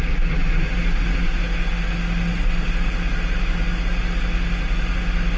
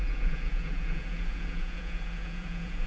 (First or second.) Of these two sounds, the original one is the first